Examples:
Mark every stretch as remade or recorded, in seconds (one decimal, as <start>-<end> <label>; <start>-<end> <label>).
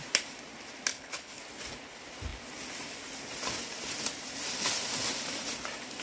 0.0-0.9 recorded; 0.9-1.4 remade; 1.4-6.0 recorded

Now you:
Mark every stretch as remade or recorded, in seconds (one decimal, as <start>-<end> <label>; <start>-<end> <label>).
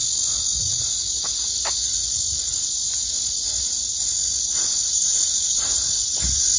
0.0-2.0 recorded; 2.0-3.0 remade; 3.0-6.6 recorded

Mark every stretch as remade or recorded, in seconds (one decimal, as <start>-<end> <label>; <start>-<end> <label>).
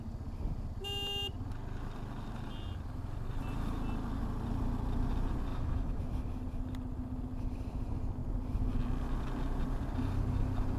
0.0-5.5 recorded; 5.5-6.0 remade; 6.0-10.8 recorded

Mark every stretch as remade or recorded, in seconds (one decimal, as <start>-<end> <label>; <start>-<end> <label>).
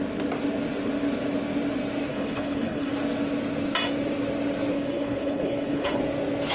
0.0-2.1 recorded; 2.1-2.9 remade; 2.9-4.7 recorded; 4.7-6.0 remade; 6.0-6.5 recorded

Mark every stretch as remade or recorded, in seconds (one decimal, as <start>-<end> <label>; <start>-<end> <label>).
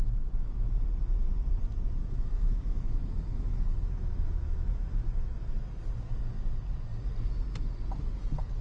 0.0-2.0 recorded; 2.0-5.5 remade; 5.5-8.6 recorded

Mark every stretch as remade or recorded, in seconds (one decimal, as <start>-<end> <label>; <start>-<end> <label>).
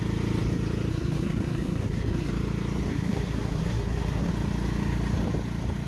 0.0-0.9 recorded; 0.9-2.3 remade; 2.3-2.9 recorded; 2.9-4.3 remade; 4.3-5.9 recorded